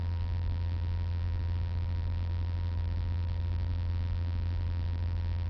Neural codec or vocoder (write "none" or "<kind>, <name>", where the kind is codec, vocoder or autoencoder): vocoder, BigVGAN v2